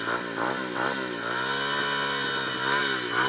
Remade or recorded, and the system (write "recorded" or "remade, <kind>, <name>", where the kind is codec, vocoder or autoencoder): recorded